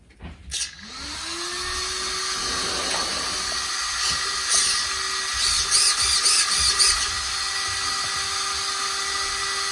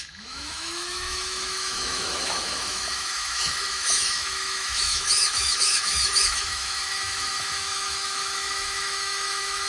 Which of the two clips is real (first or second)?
first